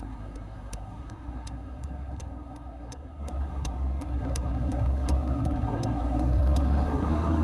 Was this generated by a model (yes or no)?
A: yes